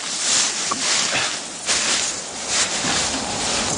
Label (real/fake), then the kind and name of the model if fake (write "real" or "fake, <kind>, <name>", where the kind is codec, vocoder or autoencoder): real